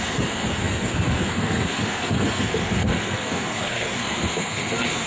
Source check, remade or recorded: remade